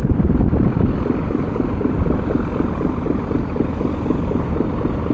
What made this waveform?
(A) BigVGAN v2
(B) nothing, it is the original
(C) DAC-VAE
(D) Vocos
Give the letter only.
B